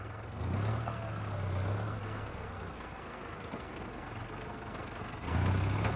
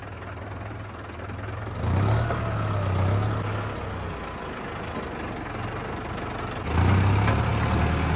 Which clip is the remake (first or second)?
first